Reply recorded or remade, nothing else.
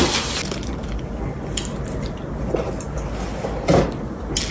recorded